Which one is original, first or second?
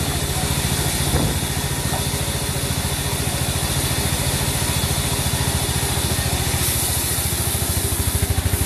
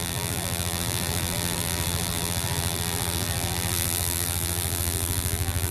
first